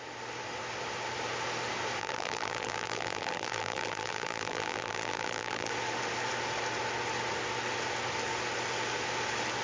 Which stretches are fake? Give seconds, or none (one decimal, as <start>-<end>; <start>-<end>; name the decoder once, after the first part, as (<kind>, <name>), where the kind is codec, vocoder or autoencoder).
2.0-5.7 (vocoder, BigVGAN v2)